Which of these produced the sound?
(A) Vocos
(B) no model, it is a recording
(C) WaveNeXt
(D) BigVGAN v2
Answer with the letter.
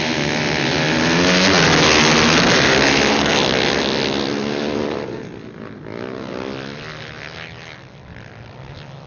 B